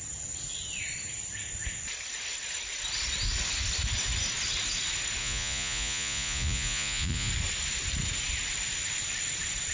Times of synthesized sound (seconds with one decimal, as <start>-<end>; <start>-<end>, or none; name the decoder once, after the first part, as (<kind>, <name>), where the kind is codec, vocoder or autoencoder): 5.2-7.3 (vocoder, Vocos)